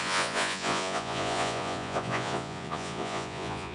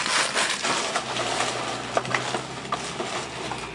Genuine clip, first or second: second